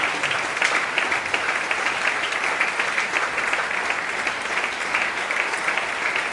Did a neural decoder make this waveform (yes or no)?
no